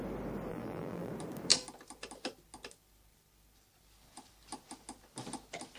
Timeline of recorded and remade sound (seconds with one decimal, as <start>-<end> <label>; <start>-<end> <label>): 0.0-0.5 recorded; 0.5-1.1 remade; 1.1-5.8 recorded